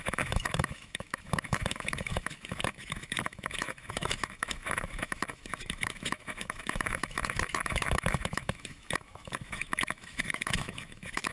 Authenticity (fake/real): fake